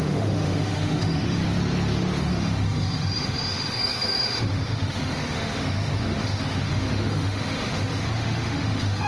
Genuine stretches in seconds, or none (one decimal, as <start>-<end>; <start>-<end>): 1.4-2.2